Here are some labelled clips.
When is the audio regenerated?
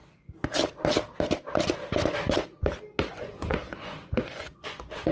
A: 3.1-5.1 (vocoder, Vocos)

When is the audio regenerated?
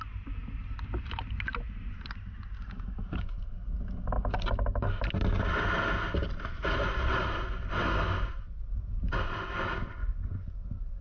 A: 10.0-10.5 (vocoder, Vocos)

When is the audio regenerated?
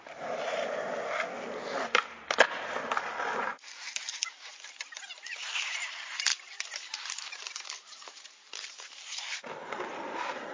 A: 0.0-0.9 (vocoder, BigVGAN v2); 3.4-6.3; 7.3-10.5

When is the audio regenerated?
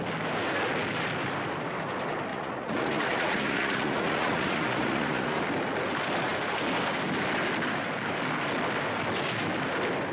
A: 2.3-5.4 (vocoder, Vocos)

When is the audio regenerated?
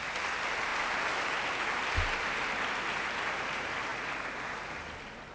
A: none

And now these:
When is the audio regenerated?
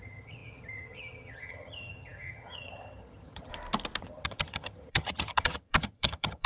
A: 0.0-3.5 (vocoder, HiFi-GAN); 4.0-6.5